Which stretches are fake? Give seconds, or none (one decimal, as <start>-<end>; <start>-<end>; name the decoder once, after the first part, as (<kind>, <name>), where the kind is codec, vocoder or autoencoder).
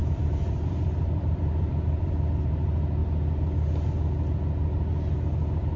0.0-2.5 (vocoder, BigVGAN v2)